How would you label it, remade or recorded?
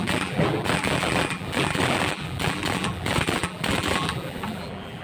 remade